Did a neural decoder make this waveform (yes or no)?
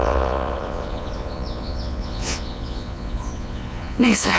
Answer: yes